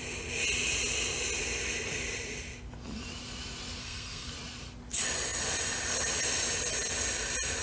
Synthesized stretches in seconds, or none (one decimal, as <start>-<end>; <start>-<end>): 3.8-4.3